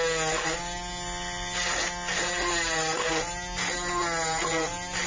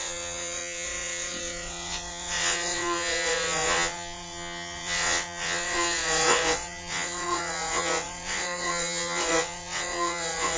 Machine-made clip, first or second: second